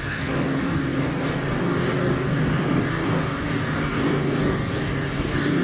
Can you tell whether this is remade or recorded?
remade